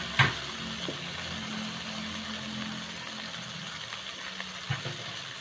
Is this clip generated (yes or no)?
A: no